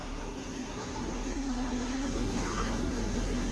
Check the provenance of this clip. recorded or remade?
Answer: remade